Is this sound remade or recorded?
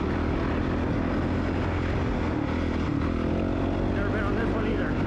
recorded